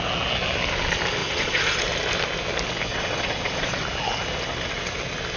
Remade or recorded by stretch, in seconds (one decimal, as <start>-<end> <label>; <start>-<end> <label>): 0.0-1.2 recorded; 1.2-1.8 remade; 1.8-2.9 recorded; 2.9-3.8 remade; 3.8-5.4 recorded